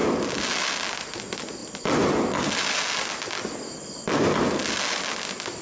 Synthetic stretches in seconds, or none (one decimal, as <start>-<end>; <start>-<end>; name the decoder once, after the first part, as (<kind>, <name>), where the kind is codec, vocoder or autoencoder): none